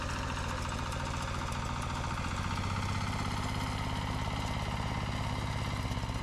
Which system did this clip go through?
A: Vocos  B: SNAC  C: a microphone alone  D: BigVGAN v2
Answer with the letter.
C